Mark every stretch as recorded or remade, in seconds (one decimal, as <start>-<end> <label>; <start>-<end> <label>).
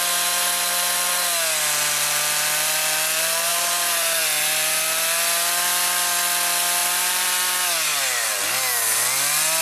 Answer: 0.0-3.5 recorded; 3.5-4.2 remade; 4.2-6.8 recorded; 6.8-7.3 remade; 7.3-9.6 recorded